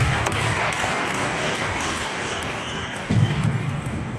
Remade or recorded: remade